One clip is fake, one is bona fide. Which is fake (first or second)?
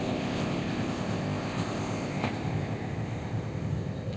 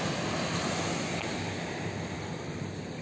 first